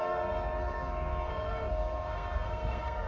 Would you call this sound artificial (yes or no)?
yes